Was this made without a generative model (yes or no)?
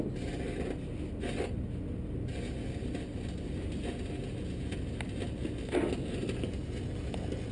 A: yes